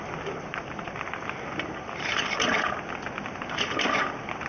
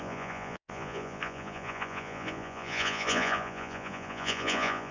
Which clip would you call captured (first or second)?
first